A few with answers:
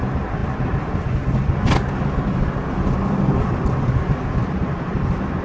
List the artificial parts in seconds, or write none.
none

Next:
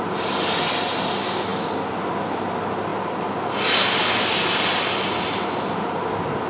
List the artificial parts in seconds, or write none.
none

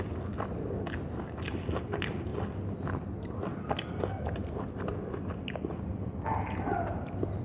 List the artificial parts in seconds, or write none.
none